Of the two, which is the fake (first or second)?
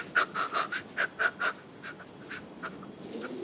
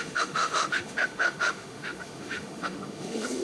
second